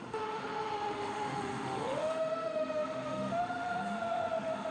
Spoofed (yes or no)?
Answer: yes